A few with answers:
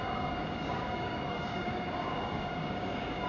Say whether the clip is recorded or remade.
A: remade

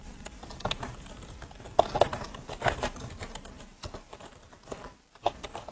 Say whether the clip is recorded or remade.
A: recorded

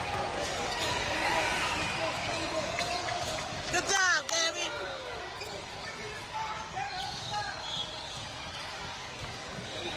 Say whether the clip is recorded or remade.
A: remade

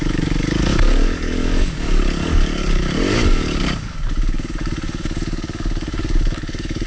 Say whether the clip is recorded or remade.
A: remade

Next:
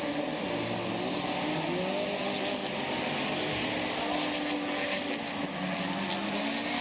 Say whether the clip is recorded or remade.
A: recorded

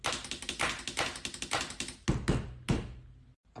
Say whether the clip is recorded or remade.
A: recorded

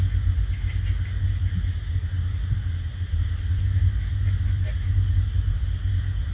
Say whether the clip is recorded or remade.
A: recorded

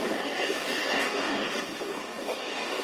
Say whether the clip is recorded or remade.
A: remade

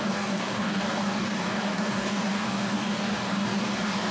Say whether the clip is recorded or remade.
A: remade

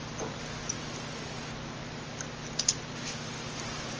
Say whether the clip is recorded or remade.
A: recorded